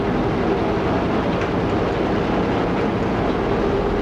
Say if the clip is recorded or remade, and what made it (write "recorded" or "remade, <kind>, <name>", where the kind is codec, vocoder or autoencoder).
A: recorded